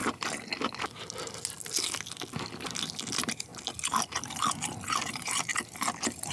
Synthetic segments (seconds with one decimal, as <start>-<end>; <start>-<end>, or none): 3.1-3.5; 4.9-5.5